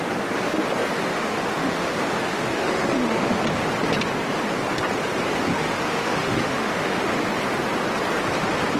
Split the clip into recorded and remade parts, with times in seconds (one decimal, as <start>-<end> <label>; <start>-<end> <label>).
0.0-1.1 recorded; 1.1-1.9 remade; 1.9-2.3 recorded; 2.3-3.4 remade; 3.4-5.5 recorded; 5.5-7.1 remade; 7.1-8.8 recorded